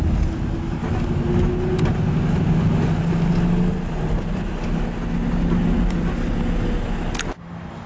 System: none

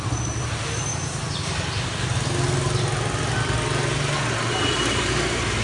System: none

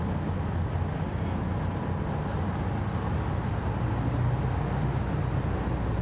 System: none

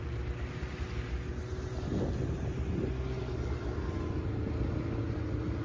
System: none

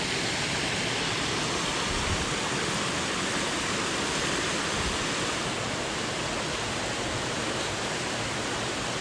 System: none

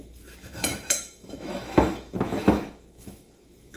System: autoencoder, DAC-VAE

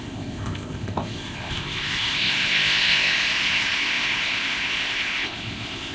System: codec, ZipCodec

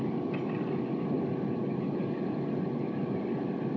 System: none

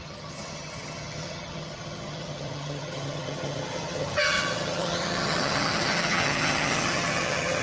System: vocoder, HiFi-GAN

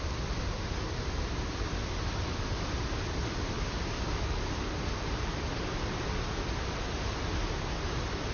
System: none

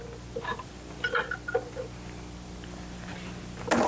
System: none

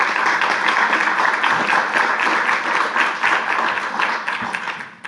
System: none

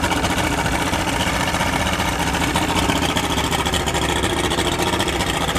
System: vocoder, BigVGAN v2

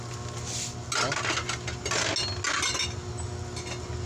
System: none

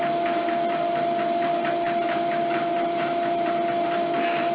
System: none